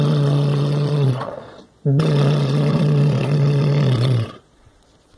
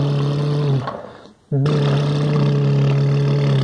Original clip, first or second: second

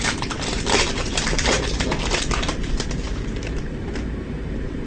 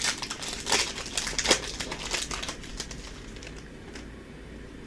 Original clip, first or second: second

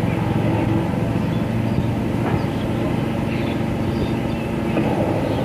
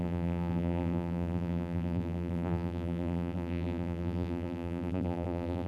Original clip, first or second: first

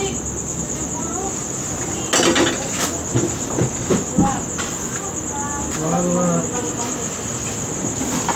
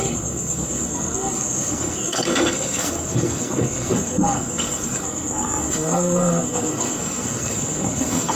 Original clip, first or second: first